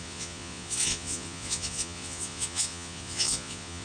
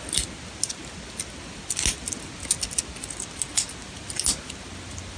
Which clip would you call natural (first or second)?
second